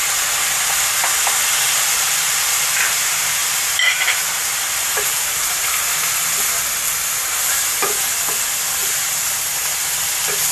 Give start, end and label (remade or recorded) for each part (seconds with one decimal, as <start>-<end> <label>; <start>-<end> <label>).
0.0-3.4 recorded; 3.4-6.2 remade; 6.2-8.8 recorded; 8.8-9.9 remade; 9.9-10.5 recorded